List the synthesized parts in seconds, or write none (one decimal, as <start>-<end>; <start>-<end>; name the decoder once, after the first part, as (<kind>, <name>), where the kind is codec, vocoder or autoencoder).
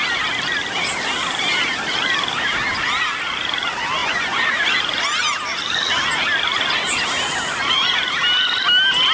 4.0-4.7 (vocoder, Vocos)